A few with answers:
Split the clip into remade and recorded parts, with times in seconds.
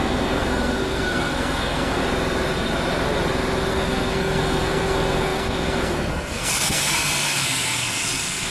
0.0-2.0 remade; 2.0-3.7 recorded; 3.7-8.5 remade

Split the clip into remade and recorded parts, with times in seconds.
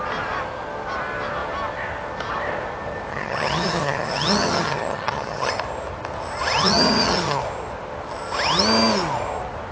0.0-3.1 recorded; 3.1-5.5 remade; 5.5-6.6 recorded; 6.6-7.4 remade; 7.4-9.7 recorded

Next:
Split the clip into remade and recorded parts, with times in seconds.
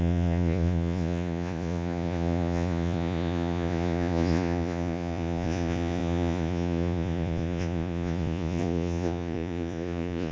0.0-10.3 remade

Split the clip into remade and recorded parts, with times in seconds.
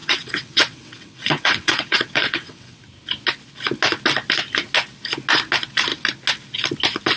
0.0-2.8 remade; 2.8-7.2 recorded